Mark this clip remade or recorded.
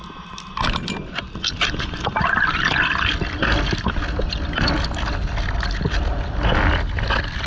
recorded